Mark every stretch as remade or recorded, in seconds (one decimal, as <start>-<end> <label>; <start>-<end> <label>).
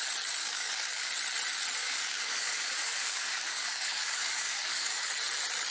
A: 0.0-0.4 recorded; 0.4-1.1 remade; 1.1-1.8 recorded; 1.8-5.1 remade; 5.1-5.7 recorded